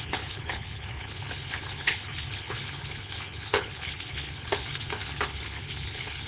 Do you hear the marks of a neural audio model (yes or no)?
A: yes